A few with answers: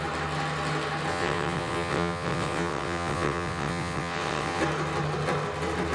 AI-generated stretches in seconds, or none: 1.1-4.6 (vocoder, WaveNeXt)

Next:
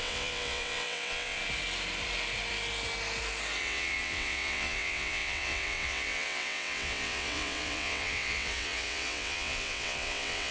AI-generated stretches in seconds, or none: 0.0-1.4 (vocoder, WaveNeXt); 3.6-10.5

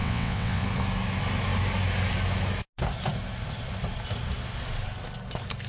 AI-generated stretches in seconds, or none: 0.0-0.6 (vocoder, WaveNeXt)

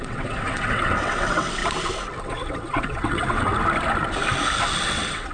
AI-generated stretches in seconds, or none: 0.0-1.6 (vocoder, WaveNeXt); 2.2-3.5; 4.8-5.3

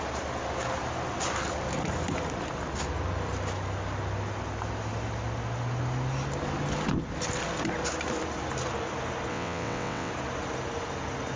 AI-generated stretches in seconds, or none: 9.3-10.1 (vocoder, WaveNeXt)

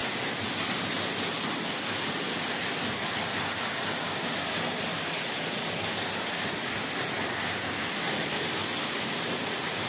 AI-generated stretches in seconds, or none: none

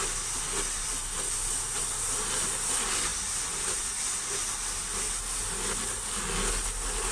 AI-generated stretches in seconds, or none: none